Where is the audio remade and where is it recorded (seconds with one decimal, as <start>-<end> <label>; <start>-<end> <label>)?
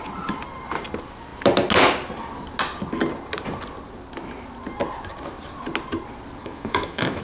0.0-6.4 recorded; 6.4-7.2 remade